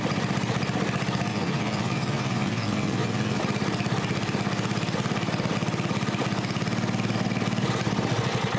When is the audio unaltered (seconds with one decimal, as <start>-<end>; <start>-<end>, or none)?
0.0-1.3; 3.4-8.6